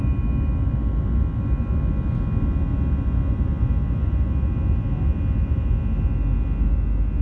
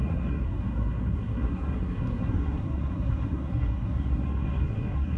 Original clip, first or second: first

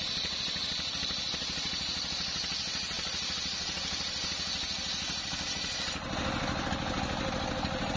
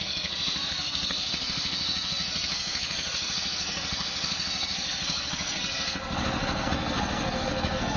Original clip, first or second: first